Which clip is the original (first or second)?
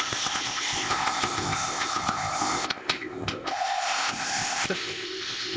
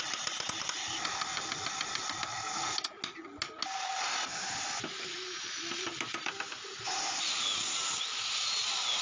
second